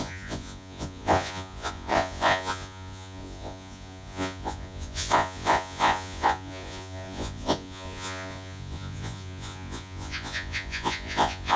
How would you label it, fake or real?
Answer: fake